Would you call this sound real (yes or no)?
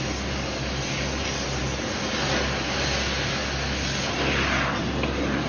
yes